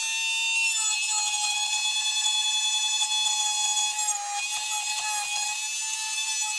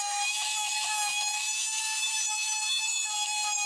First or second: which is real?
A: first